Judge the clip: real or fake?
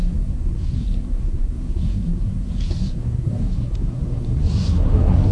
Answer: fake